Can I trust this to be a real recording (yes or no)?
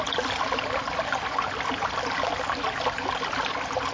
yes